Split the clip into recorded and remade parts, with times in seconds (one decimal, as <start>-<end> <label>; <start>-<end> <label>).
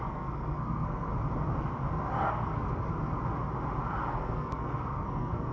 0.0-1.1 remade; 1.1-2.3 recorded; 2.3-2.9 remade; 2.9-4.1 recorded; 4.1-5.5 remade